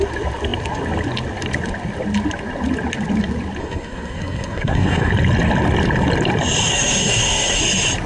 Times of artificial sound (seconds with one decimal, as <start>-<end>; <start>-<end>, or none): 3.6-5.1; 6.7-7.6